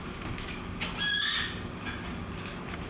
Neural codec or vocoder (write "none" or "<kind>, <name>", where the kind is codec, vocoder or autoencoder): none